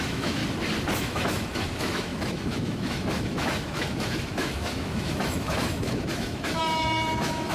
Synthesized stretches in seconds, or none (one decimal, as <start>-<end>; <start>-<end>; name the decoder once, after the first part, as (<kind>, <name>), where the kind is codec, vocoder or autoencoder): 0.0-0.4 (autoencoder, DAC-VAE); 1.0-7.5